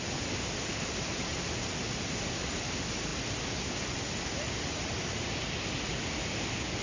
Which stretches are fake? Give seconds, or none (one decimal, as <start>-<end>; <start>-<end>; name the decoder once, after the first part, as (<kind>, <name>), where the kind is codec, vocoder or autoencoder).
none